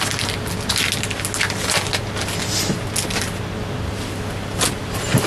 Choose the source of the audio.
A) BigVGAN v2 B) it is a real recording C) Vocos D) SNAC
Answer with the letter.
B